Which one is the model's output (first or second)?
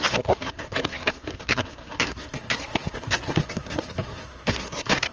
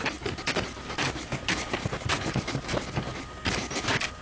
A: first